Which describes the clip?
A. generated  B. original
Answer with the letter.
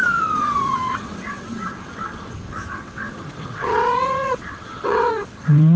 A